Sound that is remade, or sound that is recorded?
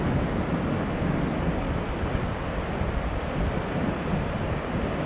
recorded